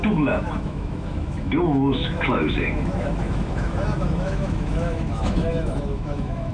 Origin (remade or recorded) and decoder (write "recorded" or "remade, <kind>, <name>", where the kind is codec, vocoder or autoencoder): remade, autoencoder, DAC-VAE